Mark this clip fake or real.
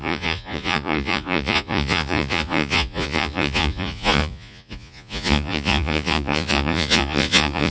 fake